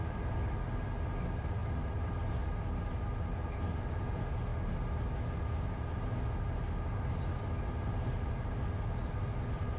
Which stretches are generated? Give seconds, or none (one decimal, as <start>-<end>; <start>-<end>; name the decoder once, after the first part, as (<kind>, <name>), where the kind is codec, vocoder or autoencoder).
none